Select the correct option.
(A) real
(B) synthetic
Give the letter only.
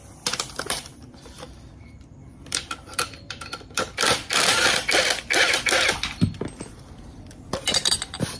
B